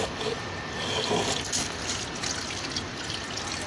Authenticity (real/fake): real